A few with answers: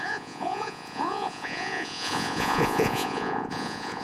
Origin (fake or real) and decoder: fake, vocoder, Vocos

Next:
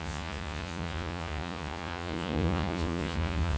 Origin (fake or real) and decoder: fake, vocoder, Vocos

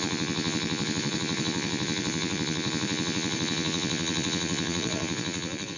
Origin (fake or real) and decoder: fake, vocoder, Vocos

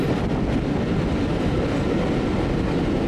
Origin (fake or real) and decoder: real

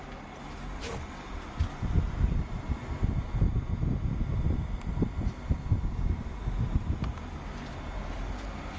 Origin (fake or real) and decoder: real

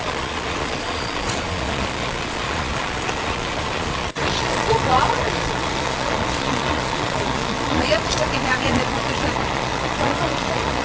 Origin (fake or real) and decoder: fake, vocoder, Vocos